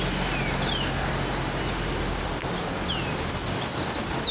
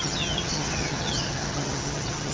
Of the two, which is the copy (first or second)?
second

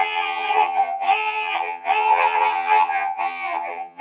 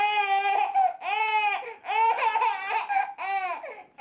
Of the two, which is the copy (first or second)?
first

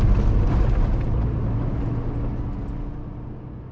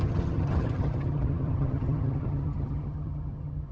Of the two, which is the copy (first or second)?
second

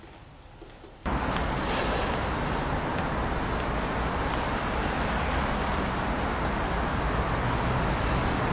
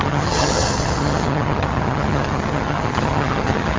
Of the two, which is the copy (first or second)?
second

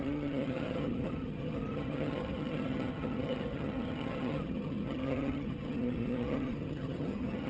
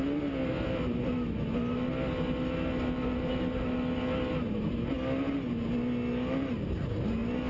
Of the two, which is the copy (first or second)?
first